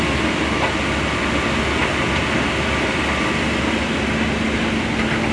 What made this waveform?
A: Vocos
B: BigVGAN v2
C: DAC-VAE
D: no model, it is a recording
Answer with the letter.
D